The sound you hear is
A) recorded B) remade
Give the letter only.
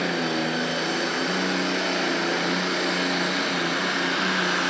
A